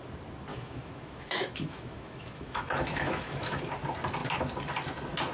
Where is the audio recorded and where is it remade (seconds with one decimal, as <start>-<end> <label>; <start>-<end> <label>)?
0.0-0.5 recorded; 0.5-3.7 remade; 3.7-5.3 recorded